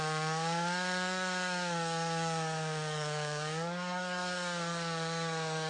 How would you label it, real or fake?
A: fake